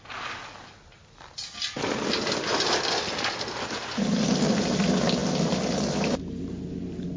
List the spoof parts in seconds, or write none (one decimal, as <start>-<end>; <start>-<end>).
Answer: none